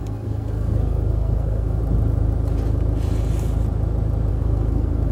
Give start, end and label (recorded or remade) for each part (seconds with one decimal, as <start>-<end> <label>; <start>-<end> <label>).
0.0-1.8 remade; 1.8-4.3 recorded; 4.3-5.1 remade